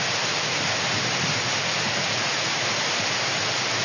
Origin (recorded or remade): recorded